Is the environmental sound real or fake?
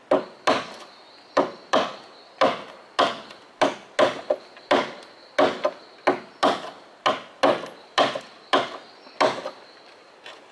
real